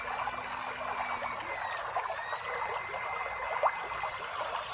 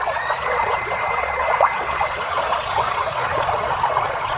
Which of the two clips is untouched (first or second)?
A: first